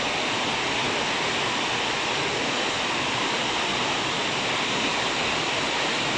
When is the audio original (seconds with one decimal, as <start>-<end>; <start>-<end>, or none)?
0.0-6.2